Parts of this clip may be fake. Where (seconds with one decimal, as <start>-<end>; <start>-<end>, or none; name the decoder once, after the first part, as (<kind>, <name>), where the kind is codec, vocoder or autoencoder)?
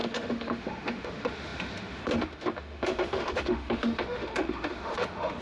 0.0-5.4 (autoencoder, DAC-VAE)